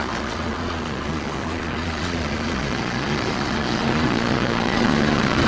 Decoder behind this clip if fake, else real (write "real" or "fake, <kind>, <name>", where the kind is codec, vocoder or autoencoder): fake, vocoder, Vocos